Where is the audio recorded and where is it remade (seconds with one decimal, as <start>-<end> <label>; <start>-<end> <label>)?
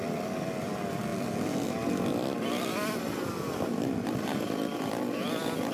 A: 0.0-5.7 recorded